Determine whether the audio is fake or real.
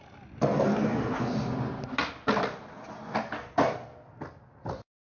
real